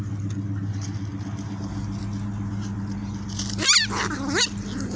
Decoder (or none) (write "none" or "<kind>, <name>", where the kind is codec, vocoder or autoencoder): none